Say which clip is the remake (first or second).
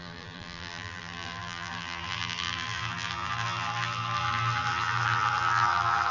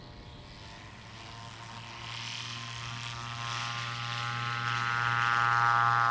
first